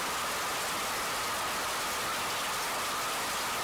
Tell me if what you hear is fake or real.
real